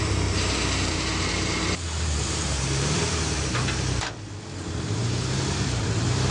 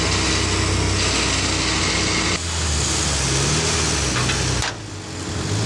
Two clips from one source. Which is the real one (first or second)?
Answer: second